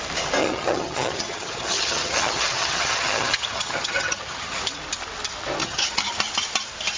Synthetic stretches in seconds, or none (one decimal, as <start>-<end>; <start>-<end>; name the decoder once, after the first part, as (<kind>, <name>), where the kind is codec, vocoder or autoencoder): 0.4-4.6 (vocoder, HiFi-GAN); 5.6-6.1